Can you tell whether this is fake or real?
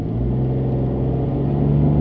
real